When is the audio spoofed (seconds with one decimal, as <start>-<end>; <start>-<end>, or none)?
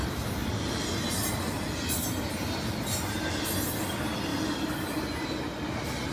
4.3-5.0